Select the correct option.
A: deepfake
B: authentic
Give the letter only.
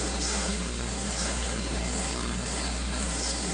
A